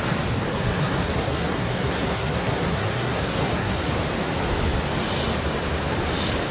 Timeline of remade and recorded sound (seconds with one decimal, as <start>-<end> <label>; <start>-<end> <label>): 0.0-0.5 recorded; 0.5-3.9 remade; 3.9-6.5 recorded